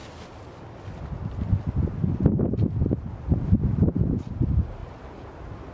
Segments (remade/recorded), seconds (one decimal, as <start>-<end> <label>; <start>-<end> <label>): 0.0-3.4 recorded; 3.4-4.8 remade; 4.8-5.7 recorded